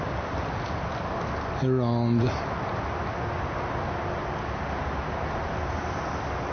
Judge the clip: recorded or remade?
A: recorded